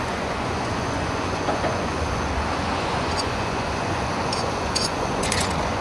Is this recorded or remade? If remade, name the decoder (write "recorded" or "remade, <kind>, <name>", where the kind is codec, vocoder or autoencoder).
remade, vocoder, Vocos